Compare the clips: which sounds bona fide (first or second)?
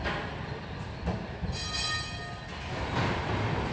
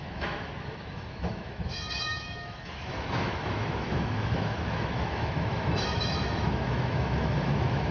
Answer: first